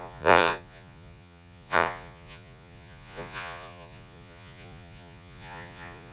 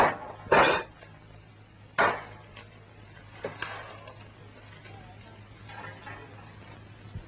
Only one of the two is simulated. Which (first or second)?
first